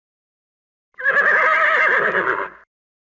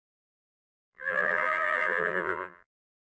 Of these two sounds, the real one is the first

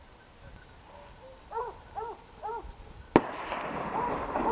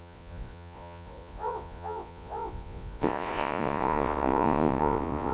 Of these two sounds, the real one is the first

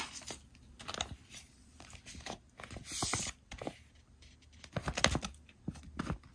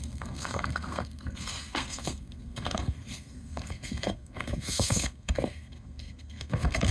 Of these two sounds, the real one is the first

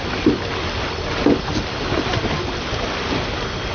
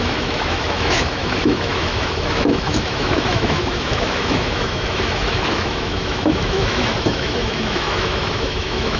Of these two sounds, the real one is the first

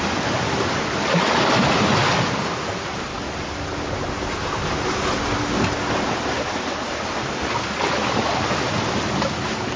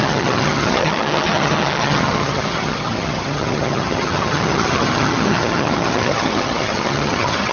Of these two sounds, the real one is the first